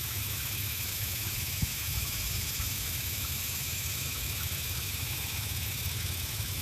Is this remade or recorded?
remade